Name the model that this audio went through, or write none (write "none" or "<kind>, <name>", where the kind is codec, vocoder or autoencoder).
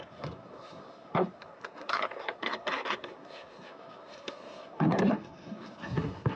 codec, SNAC